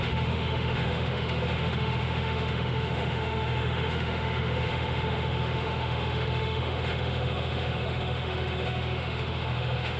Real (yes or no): no